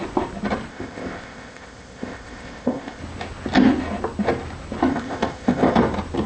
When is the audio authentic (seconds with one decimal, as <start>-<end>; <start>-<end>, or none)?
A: 0.0-0.7; 3.0-4.9; 5.8-6.3